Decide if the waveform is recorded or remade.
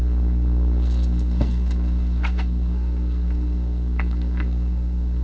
remade